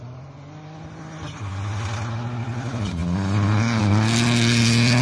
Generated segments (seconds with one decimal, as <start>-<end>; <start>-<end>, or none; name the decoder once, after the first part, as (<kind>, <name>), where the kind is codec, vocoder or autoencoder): none